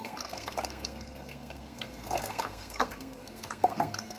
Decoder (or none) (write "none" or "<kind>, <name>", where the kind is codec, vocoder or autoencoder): codec, SNAC